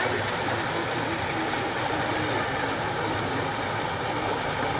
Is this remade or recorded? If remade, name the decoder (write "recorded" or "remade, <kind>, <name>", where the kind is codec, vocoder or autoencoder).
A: recorded